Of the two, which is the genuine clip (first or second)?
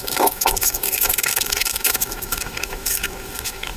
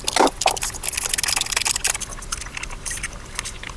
second